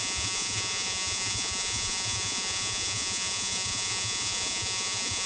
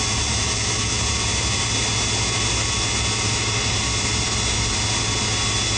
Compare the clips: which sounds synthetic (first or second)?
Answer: first